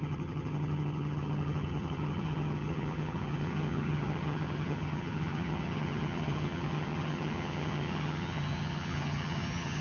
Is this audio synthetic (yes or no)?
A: yes